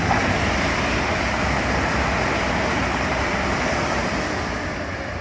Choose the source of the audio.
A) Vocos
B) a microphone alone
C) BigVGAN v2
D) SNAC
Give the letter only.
B